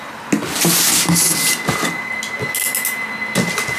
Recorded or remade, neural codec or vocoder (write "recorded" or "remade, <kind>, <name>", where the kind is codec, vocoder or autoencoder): recorded